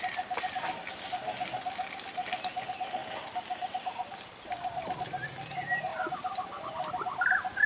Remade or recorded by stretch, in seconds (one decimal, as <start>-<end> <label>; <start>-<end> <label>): 0.0-5.9 recorded; 5.9-6.8 remade; 6.8-7.7 recorded